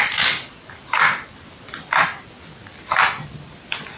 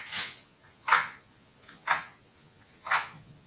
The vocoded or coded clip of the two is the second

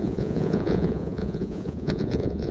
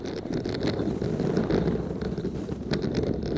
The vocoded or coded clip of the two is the first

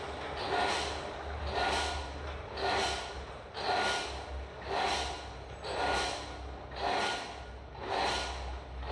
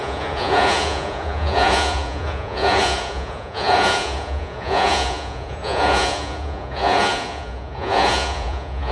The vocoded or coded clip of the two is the second